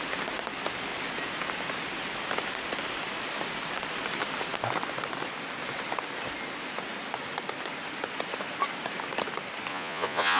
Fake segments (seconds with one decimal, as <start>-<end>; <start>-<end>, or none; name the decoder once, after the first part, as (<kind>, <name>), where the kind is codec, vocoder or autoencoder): 9.7-10.4 (vocoder, Vocos)